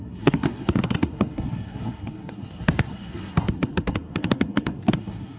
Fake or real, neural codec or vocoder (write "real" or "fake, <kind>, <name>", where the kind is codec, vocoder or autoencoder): fake, codec, SNAC